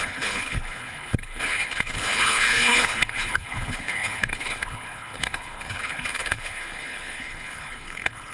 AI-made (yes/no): yes